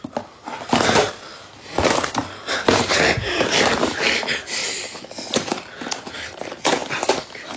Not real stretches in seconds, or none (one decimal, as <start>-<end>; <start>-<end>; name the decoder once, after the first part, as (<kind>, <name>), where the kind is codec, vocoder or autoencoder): 2.2-3.8 (vocoder, BigVGAN v2); 6.8-7.6